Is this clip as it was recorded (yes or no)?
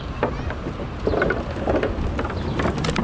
yes